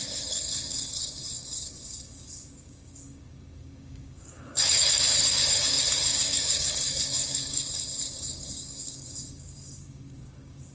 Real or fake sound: fake